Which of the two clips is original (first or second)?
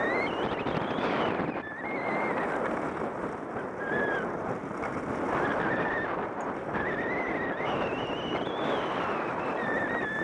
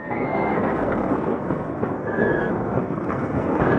first